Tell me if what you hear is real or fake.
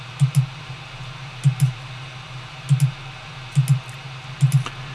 real